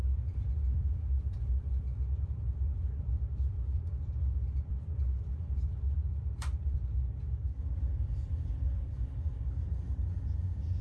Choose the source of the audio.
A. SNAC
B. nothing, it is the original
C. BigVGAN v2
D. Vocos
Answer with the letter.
C